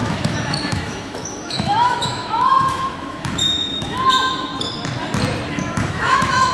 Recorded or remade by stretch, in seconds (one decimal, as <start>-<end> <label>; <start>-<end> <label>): 0.0-4.5 remade; 4.5-5.5 recorded; 5.5-6.5 remade